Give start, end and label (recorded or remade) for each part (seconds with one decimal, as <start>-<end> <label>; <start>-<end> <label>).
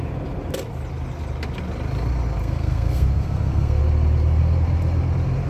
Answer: 0.0-2.4 recorded; 2.4-3.8 remade; 3.8-5.5 recorded